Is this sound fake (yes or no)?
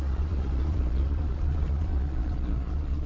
yes